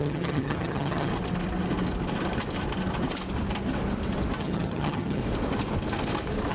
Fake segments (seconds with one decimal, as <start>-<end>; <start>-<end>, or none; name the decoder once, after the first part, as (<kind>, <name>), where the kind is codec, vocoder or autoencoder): 0.0-1.1 (vocoder, HiFi-GAN); 4.4-5.2